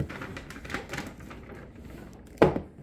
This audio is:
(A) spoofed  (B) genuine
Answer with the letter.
B